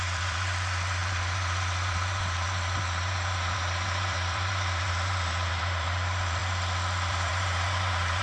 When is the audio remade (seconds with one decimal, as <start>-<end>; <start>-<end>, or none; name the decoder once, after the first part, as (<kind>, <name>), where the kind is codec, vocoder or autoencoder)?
0.0-6.4 (vocoder, BigVGAN v2); 7.1-8.2